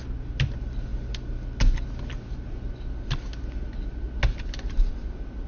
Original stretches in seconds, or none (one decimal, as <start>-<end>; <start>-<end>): 0.0-5.5